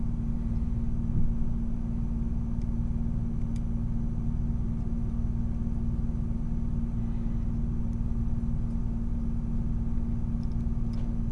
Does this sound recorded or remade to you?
recorded